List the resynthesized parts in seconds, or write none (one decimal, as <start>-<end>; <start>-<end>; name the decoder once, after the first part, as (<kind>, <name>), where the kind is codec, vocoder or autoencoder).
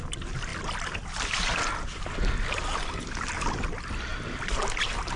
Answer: none